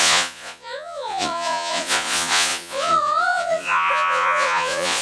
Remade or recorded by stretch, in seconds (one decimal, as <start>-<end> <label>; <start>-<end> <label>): 0.0-5.0 remade